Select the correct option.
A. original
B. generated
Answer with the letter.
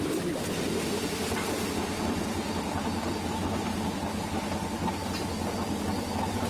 A